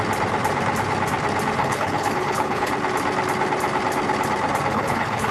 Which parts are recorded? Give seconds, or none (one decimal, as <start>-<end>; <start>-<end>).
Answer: 0.0-1.6; 2.7-4.7